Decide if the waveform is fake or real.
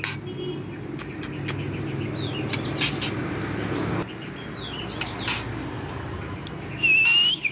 real